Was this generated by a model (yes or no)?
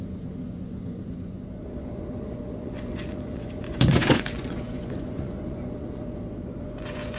yes